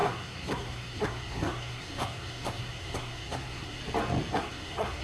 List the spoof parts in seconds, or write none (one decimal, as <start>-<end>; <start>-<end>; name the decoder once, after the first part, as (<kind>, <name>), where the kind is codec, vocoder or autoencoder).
0.0-3.8 (codec, SNAC); 4.3-5.0